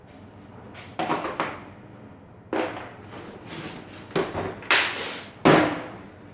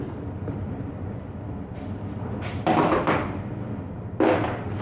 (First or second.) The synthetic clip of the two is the second